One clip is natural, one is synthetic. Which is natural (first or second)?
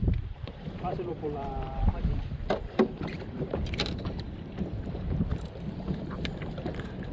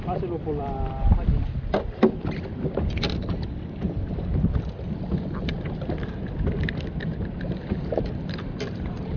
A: second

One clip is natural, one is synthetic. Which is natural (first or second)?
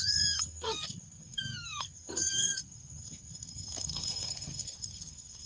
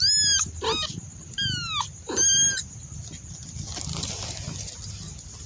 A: second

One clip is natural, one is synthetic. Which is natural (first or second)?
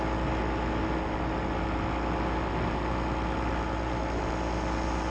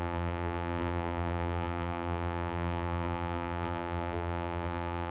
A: first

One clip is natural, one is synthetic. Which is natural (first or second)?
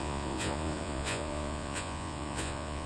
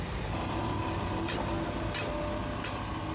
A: second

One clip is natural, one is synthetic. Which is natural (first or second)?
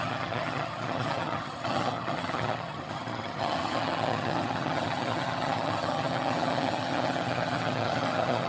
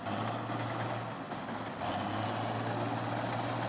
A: second